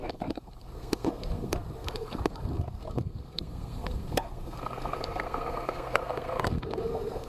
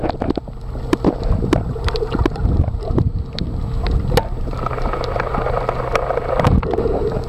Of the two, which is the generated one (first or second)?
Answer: first